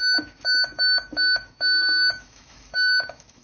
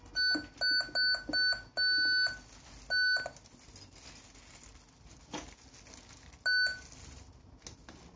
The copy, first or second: first